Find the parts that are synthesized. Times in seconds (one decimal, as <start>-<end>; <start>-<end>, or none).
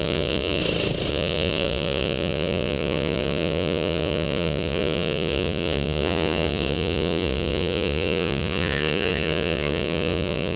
0.0-0.6; 1.1-10.6